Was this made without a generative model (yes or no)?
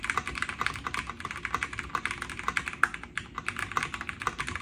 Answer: yes